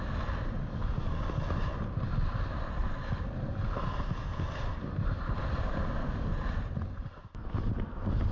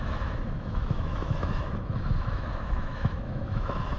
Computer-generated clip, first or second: second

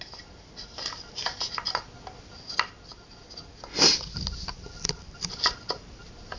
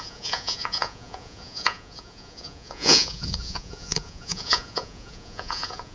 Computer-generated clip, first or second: second